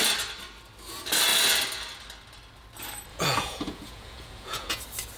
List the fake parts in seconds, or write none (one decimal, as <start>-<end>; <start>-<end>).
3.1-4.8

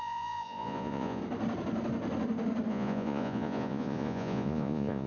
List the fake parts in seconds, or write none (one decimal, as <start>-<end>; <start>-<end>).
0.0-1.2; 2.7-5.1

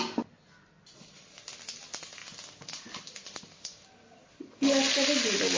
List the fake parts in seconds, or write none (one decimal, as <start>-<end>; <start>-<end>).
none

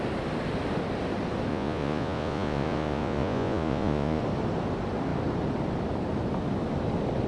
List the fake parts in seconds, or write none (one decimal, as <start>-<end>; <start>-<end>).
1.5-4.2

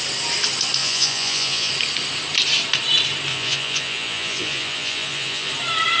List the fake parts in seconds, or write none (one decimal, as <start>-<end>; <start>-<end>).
0.8-1.7; 3.3-5.5

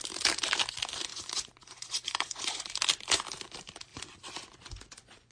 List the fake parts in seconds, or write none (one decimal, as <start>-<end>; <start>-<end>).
1.1-2.6; 3.9-5.3

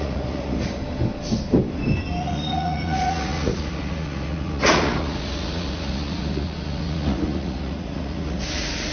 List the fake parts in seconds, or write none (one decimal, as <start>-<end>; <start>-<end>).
0.0-0.8; 2.2-8.9